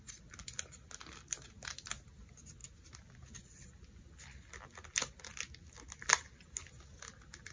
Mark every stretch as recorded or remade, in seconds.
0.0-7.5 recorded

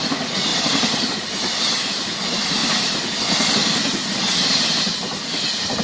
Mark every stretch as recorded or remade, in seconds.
0.0-5.8 recorded

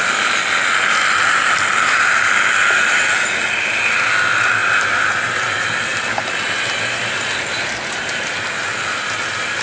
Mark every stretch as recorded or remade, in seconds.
0.0-9.6 recorded

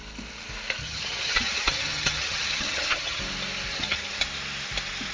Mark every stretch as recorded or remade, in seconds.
0.0-0.8 recorded; 0.8-3.2 remade; 3.2-3.7 recorded; 3.7-4.2 remade; 4.2-5.1 recorded

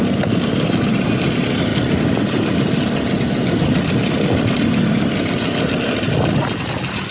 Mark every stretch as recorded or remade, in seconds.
0.0-7.1 recorded

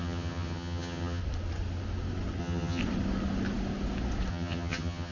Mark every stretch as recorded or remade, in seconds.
0.0-1.2 remade; 1.2-2.4 recorded; 2.4-2.8 remade; 2.8-4.3 recorded; 4.3-5.1 remade

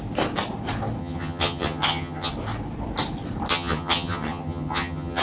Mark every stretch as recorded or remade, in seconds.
0.0-1.0 recorded; 1.0-2.3 remade; 2.3-3.5 recorded; 3.5-5.2 remade

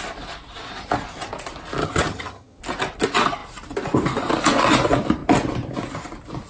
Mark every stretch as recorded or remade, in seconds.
0.0-1.8 recorded; 1.8-2.6 remade; 2.6-6.5 recorded